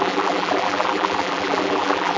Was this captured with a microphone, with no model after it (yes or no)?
no